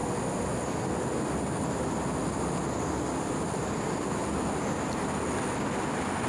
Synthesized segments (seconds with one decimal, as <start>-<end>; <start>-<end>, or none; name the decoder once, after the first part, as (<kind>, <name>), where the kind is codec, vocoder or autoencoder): none